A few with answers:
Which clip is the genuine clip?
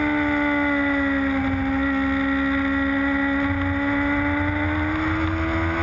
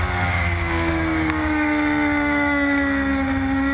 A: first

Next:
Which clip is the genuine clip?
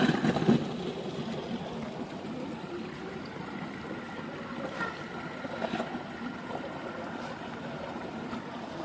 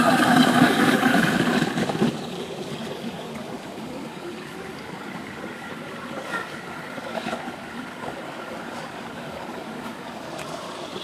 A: first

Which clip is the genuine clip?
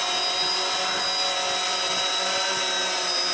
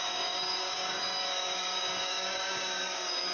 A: first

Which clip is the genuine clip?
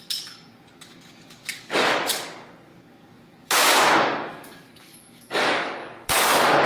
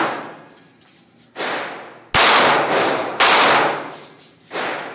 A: second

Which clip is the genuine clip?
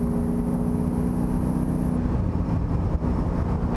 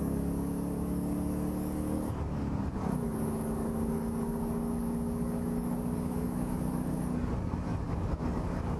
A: first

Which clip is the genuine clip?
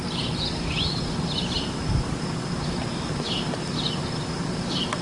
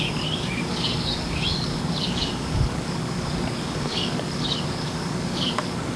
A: first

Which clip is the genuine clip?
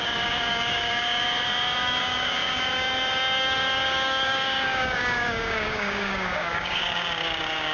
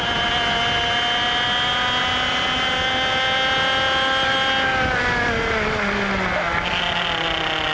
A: second